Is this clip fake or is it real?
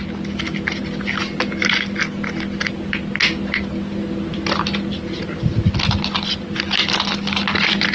real